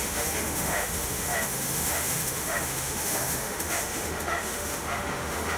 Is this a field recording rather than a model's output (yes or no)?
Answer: no